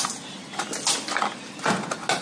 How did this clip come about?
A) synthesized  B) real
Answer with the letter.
B